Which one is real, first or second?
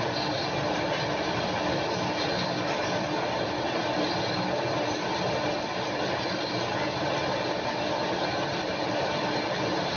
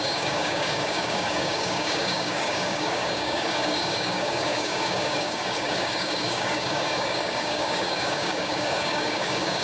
first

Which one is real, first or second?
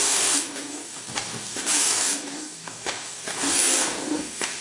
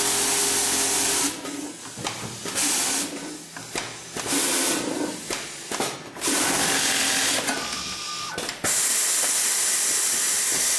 second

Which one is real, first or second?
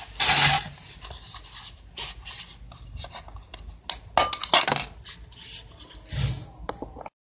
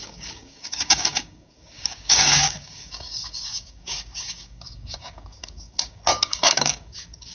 first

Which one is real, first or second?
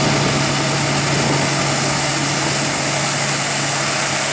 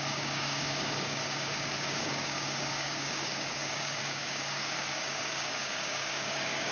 first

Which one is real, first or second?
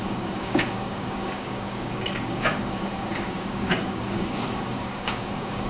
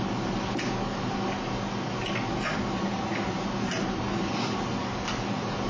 second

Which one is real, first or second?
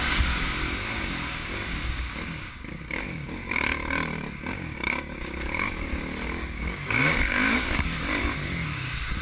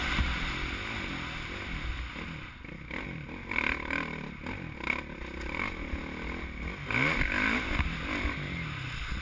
second